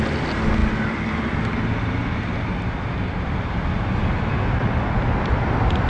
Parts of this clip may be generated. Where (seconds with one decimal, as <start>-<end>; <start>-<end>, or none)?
none